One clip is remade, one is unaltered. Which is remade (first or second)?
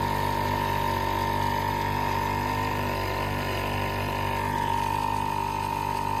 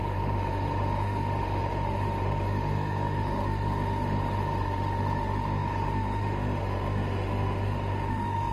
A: second